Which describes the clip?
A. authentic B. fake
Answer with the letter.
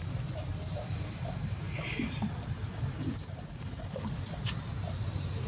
B